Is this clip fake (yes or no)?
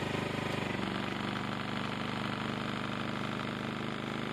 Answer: no